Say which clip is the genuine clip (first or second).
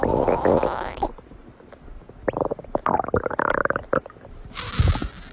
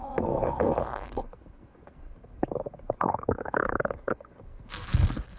first